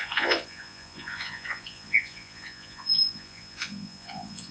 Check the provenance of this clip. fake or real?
fake